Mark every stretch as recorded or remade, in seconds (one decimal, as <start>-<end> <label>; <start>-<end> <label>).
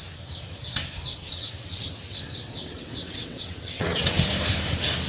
0.0-1.2 recorded; 1.2-4.3 remade; 4.3-5.1 recorded